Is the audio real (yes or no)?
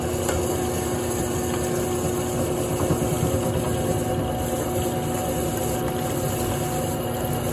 yes